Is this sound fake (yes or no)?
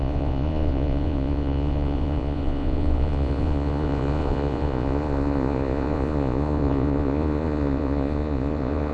yes